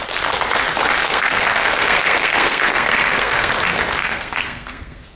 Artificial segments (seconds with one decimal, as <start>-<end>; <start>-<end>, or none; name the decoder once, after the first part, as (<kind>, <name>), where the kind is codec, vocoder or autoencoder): 1.0-3.5 (codec, SNAC); 4.0-5.2